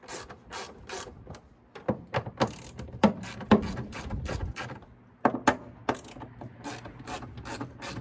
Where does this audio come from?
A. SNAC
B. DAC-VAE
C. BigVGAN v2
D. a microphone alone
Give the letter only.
D